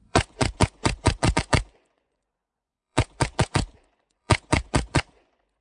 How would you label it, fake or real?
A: fake